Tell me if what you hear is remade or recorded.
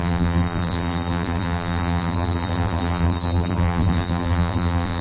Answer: remade